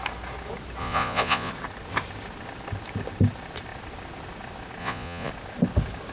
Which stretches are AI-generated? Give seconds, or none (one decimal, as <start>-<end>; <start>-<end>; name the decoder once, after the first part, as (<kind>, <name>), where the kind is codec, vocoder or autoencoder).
0.8-1.5 (vocoder, Vocos); 4.8-5.3